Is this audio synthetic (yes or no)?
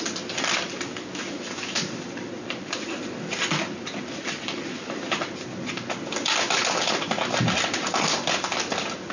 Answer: no